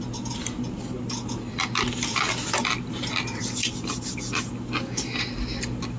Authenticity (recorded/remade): recorded